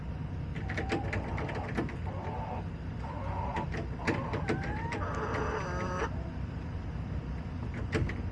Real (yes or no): yes